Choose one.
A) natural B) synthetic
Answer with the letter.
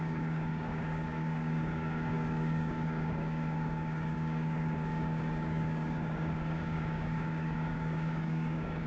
B